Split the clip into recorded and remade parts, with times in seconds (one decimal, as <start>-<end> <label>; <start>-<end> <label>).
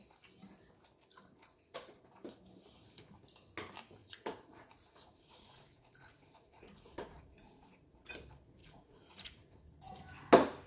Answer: 0.0-1.4 recorded; 1.4-2.0 remade; 2.0-4.0 recorded; 4.0-8.1 remade; 8.1-8.6 recorded; 8.6-9.9 remade; 9.9-10.7 recorded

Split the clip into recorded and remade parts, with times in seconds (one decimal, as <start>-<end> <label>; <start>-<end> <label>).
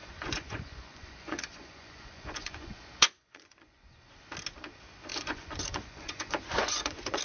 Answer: 0.0-4.1 remade; 4.1-5.1 recorded; 5.1-7.2 remade